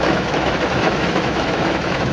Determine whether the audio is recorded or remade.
remade